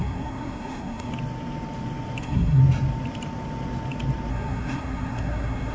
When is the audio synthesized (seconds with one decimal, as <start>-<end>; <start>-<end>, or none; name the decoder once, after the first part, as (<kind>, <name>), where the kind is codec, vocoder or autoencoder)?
0.0-1.1 (codec, SNAC); 2.2-2.6; 4.3-5.7